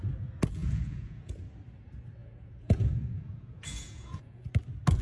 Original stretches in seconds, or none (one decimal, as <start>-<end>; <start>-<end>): 0.0-0.6; 1.3-2.2; 4.5-5.0